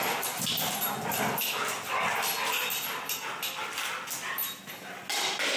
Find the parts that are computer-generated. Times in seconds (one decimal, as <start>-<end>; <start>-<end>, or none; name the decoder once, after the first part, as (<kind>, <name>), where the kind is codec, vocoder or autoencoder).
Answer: none